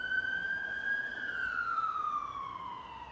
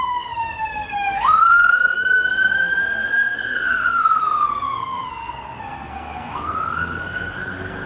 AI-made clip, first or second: second